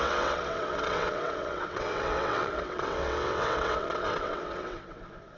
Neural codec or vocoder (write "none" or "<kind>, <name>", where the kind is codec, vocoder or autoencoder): vocoder, WaveNeXt